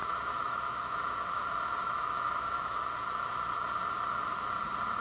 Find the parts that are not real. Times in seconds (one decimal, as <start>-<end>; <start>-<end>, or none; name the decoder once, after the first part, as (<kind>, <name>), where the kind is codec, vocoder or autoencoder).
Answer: 0.0-1.4 (autoencoder, DAC-VAE); 1.8-2.8